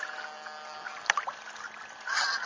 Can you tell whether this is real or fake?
real